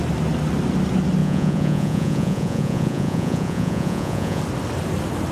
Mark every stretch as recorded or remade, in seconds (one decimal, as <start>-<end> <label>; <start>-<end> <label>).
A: 0.0-1.2 recorded; 1.2-4.4 remade; 4.4-5.3 recorded